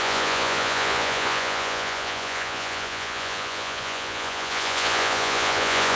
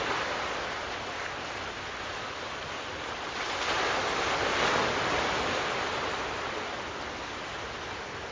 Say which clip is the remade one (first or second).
first